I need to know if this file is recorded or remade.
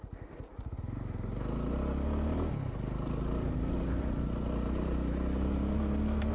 recorded